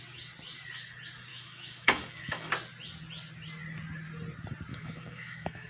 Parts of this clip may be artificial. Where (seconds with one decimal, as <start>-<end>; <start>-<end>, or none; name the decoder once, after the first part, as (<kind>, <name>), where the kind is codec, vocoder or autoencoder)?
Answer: 1.3-2.5 (autoencoder, DAC-VAE); 4.7-5.7